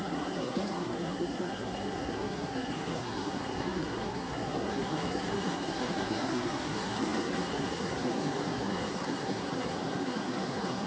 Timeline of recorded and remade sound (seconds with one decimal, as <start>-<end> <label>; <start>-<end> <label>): 0.0-10.9 remade